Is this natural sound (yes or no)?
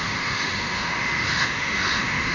no